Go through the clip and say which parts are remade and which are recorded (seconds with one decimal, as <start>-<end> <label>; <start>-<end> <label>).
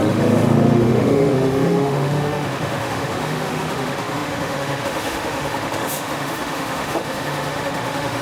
0.0-8.2 remade